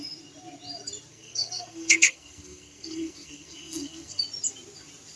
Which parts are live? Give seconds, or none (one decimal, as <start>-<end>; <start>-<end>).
0.0-1.1; 4.2-5.2